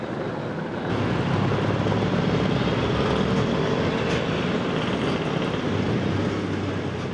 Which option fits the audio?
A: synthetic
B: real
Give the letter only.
B